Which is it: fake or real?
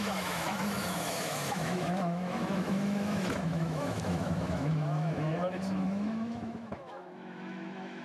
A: fake